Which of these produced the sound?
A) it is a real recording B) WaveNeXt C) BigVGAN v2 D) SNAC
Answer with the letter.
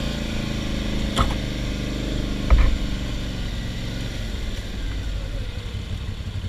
A